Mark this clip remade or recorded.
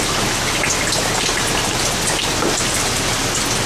recorded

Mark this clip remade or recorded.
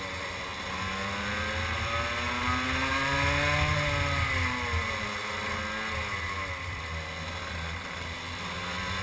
recorded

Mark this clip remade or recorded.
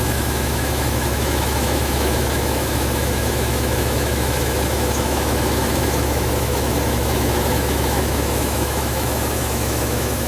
remade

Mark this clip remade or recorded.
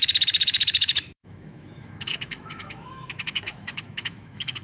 remade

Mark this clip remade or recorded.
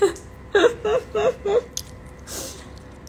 recorded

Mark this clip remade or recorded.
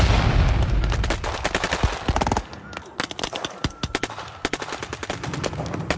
recorded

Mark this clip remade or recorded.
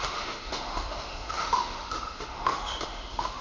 remade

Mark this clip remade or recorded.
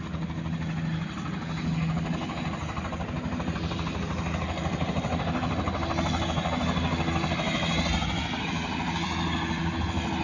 recorded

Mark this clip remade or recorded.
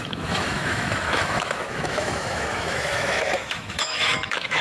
remade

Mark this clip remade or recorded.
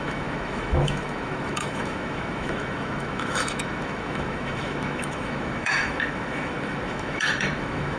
remade